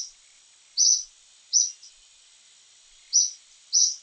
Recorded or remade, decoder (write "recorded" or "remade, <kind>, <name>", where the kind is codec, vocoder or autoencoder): recorded